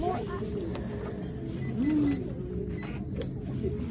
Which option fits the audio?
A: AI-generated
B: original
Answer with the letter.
B